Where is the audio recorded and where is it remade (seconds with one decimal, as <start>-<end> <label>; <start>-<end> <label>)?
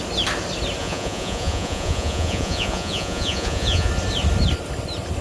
0.0-0.8 recorded; 0.8-3.9 remade; 3.9-5.2 recorded